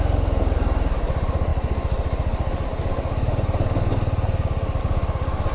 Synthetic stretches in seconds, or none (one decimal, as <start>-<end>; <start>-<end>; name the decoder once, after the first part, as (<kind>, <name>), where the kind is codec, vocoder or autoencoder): none